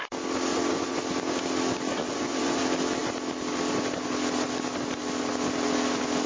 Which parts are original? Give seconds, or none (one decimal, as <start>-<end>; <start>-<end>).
0.0-0.5; 1.0-1.9; 2.6-6.3